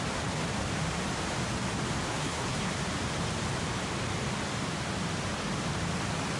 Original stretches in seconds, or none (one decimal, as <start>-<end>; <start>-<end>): 0.0-2.1; 2.7-6.4